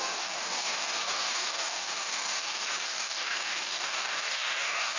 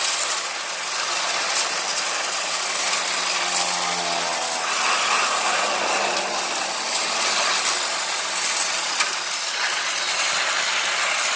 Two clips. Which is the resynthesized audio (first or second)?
first